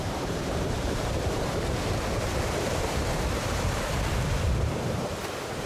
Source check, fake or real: fake